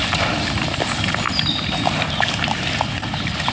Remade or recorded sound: recorded